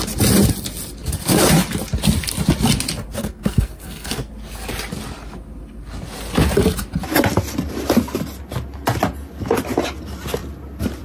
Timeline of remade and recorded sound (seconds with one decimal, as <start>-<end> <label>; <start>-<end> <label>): 0.0-3.2 recorded; 3.2-4.3 remade; 4.3-11.0 recorded